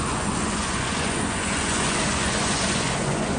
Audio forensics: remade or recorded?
remade